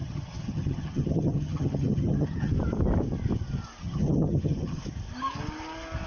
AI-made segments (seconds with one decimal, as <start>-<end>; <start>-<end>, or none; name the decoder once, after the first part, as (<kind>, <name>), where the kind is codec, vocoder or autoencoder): 0.0-2.5 (vocoder, HiFi-GAN); 3.8-4.8